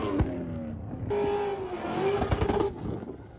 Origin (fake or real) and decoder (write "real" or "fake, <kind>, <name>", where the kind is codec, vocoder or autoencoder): real